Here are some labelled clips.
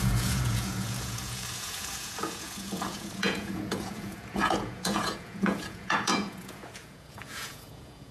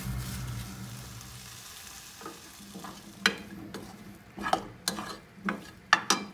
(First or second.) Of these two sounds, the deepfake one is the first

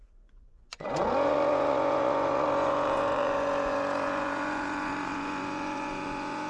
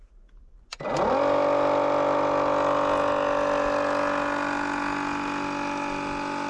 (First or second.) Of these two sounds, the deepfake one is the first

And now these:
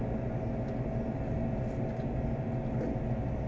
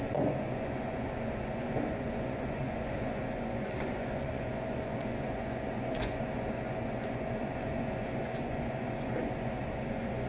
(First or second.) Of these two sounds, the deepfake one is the second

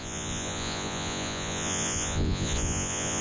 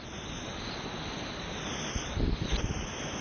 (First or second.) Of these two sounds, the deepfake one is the first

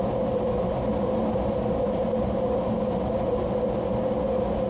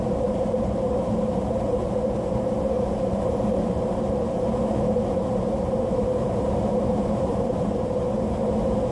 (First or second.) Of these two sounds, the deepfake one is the second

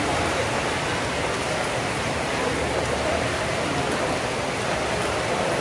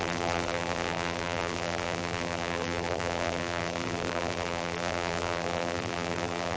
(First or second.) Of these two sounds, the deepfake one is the second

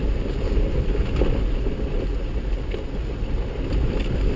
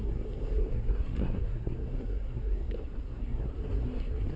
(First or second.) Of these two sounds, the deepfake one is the second